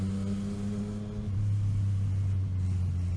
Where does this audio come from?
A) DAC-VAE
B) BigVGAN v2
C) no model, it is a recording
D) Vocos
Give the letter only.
C